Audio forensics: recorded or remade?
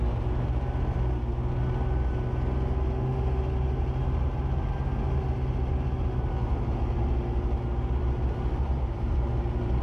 recorded